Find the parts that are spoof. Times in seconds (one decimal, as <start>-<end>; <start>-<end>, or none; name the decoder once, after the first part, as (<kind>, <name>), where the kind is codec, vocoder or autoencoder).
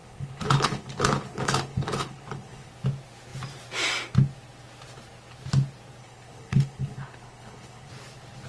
0.0-2.7 (codec, HILCodec); 6.0-7.9